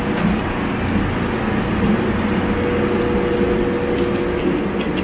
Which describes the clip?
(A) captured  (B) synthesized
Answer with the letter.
A